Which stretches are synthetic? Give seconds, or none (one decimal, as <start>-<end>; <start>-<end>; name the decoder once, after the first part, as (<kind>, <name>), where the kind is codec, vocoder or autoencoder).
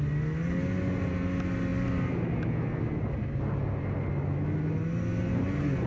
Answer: none